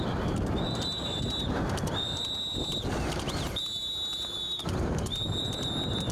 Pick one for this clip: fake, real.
real